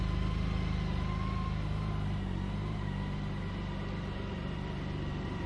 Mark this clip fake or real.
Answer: real